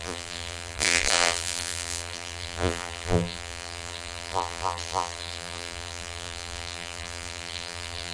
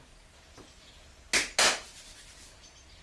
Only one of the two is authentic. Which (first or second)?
second